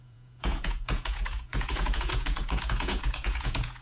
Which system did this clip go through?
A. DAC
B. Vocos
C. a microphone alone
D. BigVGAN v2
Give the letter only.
B